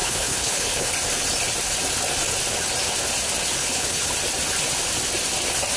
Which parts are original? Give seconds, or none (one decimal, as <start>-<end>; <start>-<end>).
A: 0.9-3.6; 4.1-5.8